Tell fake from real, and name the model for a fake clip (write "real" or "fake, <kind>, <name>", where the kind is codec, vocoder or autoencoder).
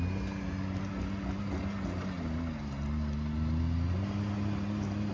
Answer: real